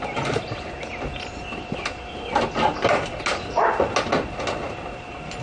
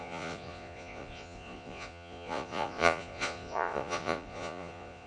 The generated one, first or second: second